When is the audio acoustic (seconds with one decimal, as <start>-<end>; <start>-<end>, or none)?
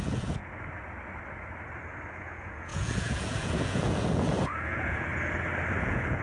0.4-2.1; 5.1-5.8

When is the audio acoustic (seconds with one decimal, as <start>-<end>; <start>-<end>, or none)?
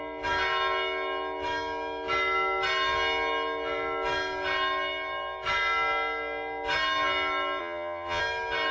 0.0-7.6; 8.2-8.7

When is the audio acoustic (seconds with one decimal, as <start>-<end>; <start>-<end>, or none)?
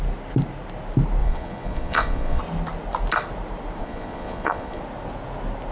0.0-1.2; 2.4-3.8; 4.8-5.7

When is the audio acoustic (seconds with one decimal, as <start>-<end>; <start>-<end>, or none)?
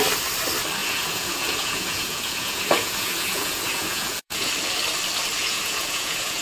0.0-0.8; 4.5-5.4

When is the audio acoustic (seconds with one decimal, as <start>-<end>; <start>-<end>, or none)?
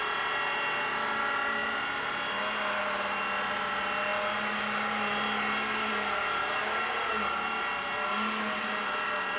0.0-9.4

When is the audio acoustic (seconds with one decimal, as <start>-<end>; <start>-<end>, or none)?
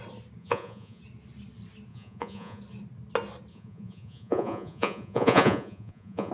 0.0-0.4; 1.0-1.9; 2.6-3.5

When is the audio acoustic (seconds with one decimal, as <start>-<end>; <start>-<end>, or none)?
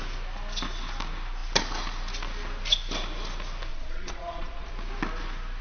0.0-3.7; 4.7-5.6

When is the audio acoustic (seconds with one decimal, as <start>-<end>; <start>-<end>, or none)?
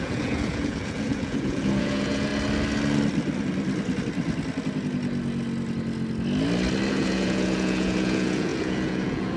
2.3-6.9